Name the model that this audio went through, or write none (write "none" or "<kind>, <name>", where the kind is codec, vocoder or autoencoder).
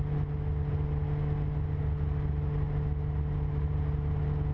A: none